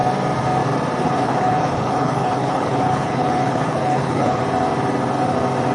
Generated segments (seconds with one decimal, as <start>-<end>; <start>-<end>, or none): 1.0-4.4